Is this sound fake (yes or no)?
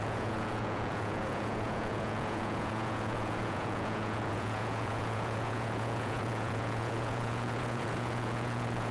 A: yes